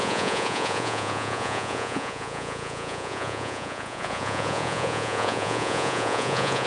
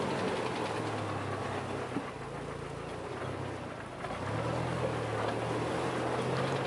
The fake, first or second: first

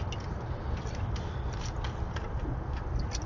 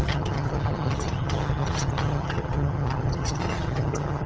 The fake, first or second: second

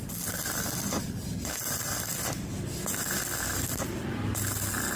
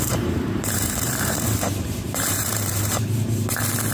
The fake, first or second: second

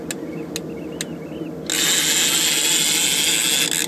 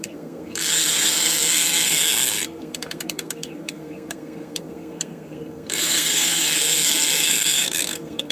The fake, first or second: second